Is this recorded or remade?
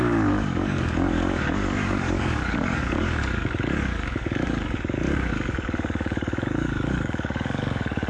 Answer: remade